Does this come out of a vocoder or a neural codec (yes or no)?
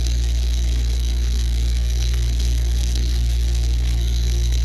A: yes